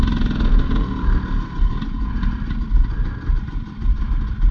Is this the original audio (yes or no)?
yes